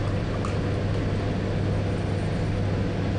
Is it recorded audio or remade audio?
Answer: recorded